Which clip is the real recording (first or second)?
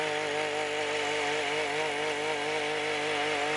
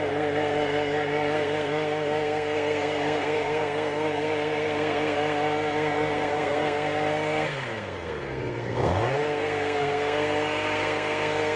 first